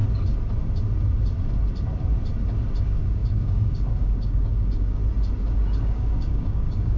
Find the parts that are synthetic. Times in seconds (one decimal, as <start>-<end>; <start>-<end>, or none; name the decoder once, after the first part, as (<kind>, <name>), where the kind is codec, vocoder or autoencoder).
2.8-5.0 (codec, DAC); 5.8-7.0

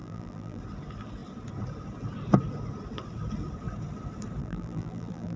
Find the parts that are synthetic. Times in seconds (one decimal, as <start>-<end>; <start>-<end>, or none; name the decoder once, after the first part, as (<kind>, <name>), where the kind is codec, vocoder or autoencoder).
0.0-0.6 (vocoder, BigVGAN v2); 4.4-5.4

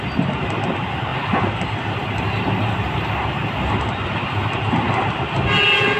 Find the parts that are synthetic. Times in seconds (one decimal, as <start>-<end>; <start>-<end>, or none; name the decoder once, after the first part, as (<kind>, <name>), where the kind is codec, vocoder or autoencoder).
none

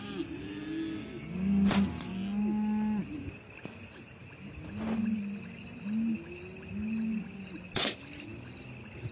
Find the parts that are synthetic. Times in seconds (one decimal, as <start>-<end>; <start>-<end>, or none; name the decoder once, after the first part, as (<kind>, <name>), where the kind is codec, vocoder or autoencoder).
none